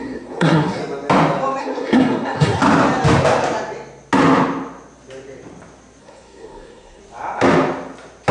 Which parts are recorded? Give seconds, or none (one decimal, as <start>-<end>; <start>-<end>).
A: 0.8-1.6; 2.6-6.0; 7.0-8.3